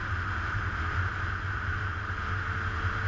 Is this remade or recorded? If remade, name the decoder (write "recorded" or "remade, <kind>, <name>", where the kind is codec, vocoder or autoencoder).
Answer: recorded